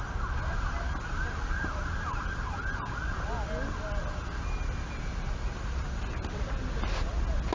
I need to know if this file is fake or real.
real